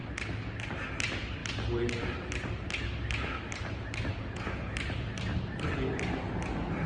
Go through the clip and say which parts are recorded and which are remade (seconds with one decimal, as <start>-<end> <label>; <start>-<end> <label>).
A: 0.0-4.1 recorded; 4.1-4.7 remade; 4.7-6.9 recorded

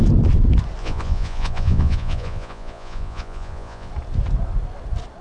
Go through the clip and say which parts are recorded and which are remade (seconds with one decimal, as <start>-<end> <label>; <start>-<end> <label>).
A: 0.0-0.8 recorded; 0.8-3.9 remade; 3.9-5.2 recorded

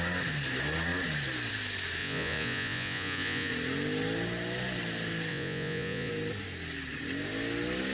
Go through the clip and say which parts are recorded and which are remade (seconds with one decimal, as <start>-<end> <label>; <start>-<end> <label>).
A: 0.0-2.0 recorded; 2.0-3.5 remade; 3.5-5.3 recorded; 5.3-6.1 remade; 6.1-7.9 recorded

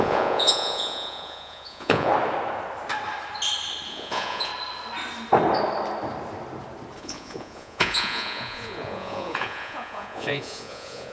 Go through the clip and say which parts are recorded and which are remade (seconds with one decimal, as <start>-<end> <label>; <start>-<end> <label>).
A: 0.0-2.1 remade; 2.1-3.9 recorded; 3.9-4.5 remade; 4.5-7.0 recorded; 7.0-11.1 remade

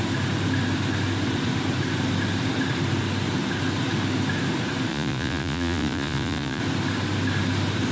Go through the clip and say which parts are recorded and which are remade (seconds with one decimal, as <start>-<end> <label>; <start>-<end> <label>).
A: 0.0-4.9 recorded; 4.9-6.6 remade; 6.6-7.9 recorded

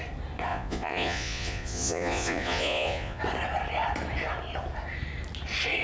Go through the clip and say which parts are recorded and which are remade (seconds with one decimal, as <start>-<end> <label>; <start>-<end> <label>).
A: 0.0-0.5 recorded; 0.5-3.2 remade; 3.2-5.8 recorded

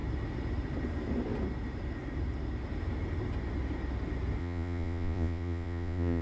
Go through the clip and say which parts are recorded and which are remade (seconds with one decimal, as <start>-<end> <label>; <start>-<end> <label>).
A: 0.0-4.4 recorded; 4.4-6.2 remade